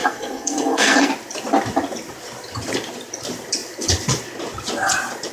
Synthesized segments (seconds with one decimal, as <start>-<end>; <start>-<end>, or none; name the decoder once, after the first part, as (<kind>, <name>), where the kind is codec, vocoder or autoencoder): 0.0-1.1 (codec, SNAC)